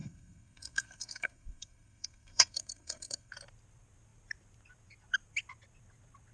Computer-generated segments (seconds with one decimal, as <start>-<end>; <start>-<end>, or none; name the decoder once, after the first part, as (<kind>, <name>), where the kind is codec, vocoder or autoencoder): 0.0-3.3 (codec, SNAC)